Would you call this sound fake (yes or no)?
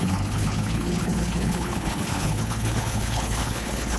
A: yes